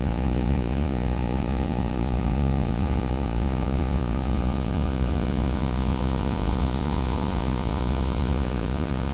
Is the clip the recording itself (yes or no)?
no